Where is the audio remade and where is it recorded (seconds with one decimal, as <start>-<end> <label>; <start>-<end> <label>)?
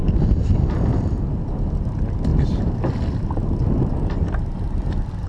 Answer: 0.0-5.3 recorded